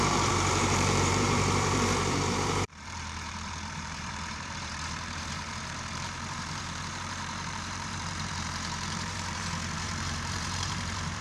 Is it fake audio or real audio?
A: fake